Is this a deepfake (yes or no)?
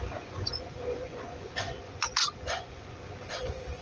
yes